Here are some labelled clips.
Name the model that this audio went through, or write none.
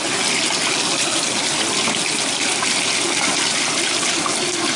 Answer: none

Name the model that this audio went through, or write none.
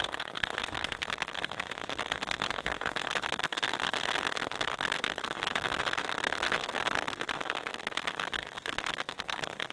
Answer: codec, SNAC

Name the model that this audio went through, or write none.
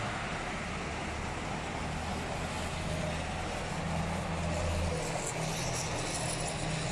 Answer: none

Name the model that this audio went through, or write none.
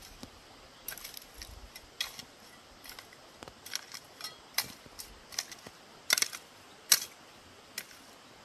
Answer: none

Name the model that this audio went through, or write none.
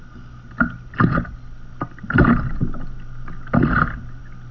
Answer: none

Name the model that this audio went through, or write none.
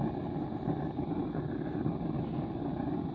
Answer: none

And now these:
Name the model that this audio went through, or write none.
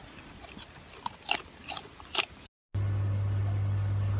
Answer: none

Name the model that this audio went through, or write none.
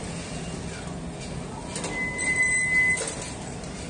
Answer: none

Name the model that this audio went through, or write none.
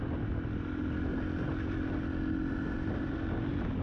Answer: none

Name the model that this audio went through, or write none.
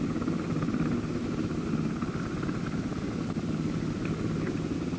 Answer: none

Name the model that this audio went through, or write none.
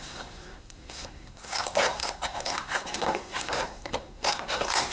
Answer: codec, SNAC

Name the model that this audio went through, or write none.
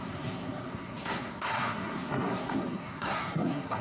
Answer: codec, SNAC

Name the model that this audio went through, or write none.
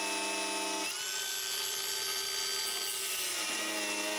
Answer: none